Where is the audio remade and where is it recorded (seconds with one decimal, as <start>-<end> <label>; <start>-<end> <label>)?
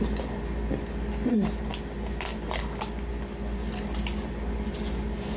0.0-5.4 recorded